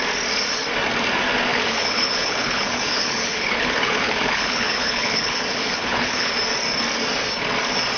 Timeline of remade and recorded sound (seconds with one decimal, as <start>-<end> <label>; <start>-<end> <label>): 0.0-1.5 recorded; 1.5-6.3 remade; 6.3-8.0 recorded